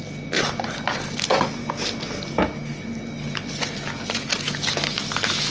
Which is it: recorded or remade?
recorded